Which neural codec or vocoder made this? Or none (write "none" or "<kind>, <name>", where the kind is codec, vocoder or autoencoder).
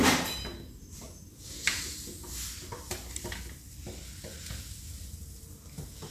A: none